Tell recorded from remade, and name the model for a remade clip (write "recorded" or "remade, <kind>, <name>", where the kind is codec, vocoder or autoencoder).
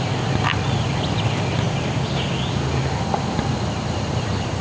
recorded